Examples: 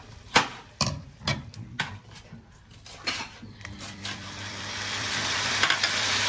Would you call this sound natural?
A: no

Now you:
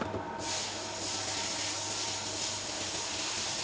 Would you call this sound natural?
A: yes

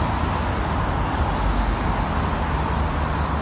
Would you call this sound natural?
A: yes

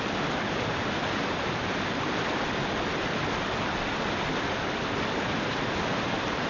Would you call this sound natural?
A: yes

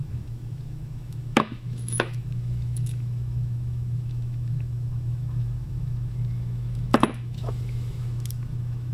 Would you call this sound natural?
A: no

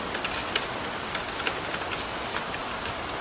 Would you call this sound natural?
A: yes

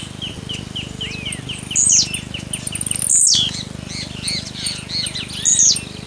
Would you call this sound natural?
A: yes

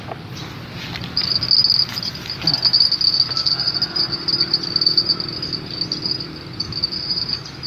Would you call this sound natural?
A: yes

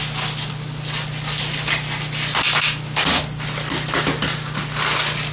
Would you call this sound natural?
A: yes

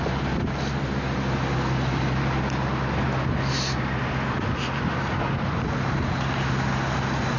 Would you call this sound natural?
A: yes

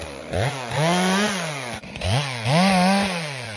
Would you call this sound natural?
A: no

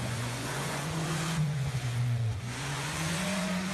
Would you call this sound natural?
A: no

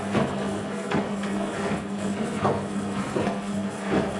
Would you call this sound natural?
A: no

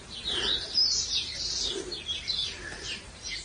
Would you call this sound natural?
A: no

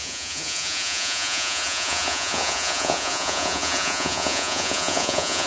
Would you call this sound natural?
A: no